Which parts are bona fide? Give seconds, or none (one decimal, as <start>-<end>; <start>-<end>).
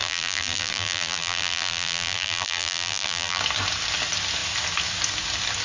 3.4-5.6